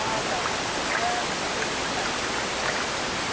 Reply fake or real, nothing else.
real